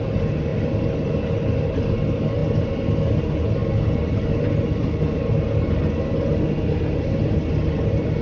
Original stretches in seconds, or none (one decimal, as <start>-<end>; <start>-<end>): 0.0-8.2

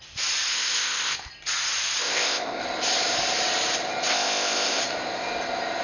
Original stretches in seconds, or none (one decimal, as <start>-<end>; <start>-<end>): 0.0-0.5; 1.3-2.0; 2.6-4.1; 4.8-5.8

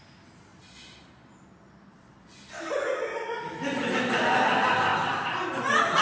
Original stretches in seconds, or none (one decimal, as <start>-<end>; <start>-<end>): 0.0-6.0

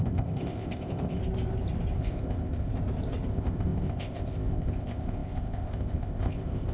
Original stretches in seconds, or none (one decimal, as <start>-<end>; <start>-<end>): 1.2-2.0; 2.7-3.3

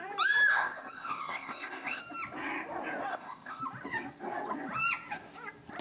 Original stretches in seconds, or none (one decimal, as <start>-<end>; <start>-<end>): 0.0-0.5; 2.0-3.1; 3.6-5.8